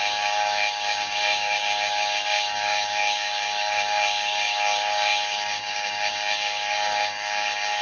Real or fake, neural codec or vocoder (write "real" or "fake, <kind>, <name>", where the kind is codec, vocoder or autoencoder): fake, codec, DAC